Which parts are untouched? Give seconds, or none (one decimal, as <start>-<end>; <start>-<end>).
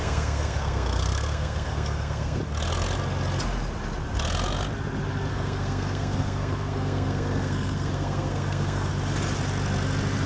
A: 2.4-5.3; 8.9-10.3